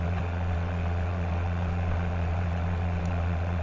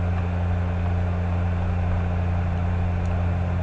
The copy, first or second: first